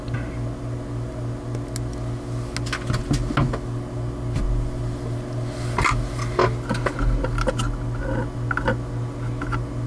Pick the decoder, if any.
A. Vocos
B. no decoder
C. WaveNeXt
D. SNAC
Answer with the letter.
B